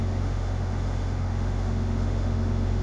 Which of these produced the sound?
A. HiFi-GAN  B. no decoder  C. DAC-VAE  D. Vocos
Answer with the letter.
C